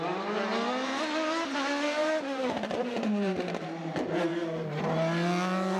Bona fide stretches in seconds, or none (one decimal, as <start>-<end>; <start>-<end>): 4.3-5.8

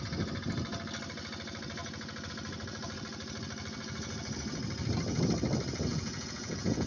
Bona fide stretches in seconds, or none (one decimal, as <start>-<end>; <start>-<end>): 0.0-5.9